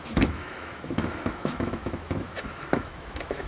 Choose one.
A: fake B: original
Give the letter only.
A